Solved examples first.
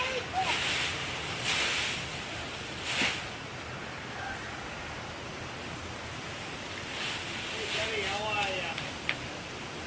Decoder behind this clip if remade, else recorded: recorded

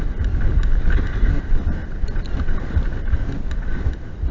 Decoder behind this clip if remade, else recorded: recorded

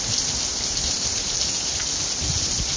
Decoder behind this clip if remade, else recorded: recorded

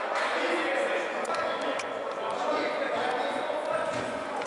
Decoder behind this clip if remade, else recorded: remade, vocoder, Vocos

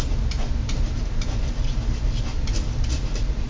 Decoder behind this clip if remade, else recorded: recorded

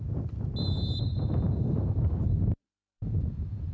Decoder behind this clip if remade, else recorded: recorded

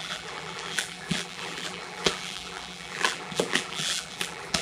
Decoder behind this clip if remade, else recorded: remade, vocoder, BigVGAN v2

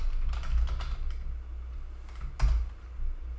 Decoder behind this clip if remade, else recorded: recorded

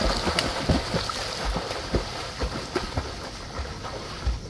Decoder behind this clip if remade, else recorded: recorded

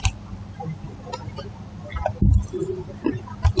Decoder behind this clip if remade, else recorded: recorded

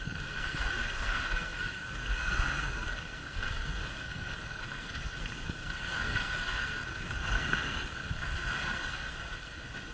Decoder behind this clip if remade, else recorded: remade, codec, SNAC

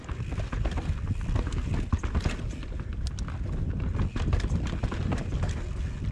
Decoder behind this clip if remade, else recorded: recorded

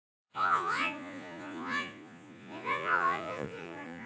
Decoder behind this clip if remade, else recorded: remade, vocoder, Vocos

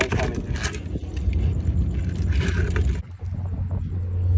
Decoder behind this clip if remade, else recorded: recorded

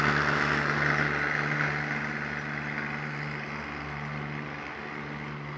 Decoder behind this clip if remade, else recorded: recorded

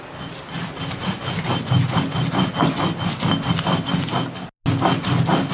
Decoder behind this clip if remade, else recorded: recorded